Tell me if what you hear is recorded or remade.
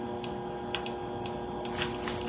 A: recorded